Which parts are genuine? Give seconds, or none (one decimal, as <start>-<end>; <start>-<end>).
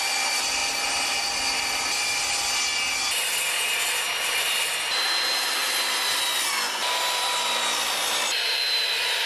0.0-9.3